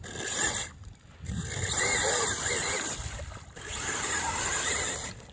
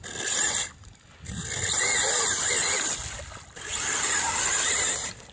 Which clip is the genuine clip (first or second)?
second